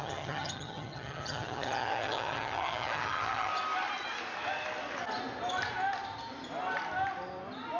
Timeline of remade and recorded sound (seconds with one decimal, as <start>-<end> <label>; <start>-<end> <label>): 0.0-3.5 remade; 3.5-7.8 recorded